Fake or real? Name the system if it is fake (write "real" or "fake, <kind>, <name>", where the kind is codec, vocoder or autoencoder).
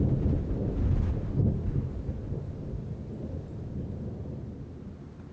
real